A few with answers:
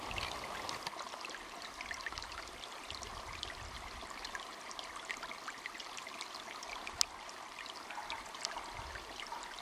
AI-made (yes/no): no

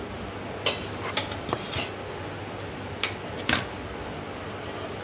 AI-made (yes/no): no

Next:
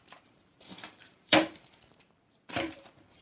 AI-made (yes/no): yes